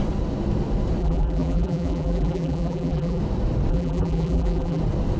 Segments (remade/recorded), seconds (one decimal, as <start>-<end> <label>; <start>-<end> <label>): 0.0-1.0 recorded; 1.0-3.2 remade; 3.2-3.7 recorded; 3.7-4.8 remade; 4.8-5.2 recorded